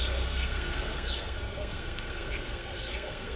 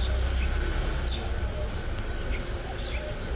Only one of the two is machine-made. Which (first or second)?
first